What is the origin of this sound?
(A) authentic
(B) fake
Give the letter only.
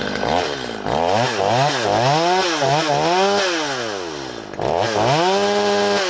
A